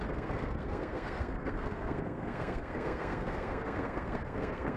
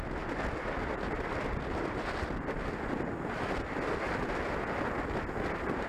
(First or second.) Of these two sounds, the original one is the second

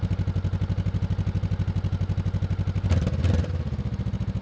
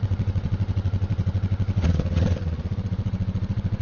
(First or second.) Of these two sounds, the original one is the first